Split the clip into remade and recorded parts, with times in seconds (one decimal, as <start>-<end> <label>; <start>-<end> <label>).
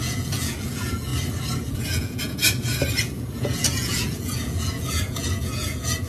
0.0-1.1 remade; 1.1-1.7 recorded; 1.7-2.4 remade; 2.4-3.0 recorded; 3.0-6.1 remade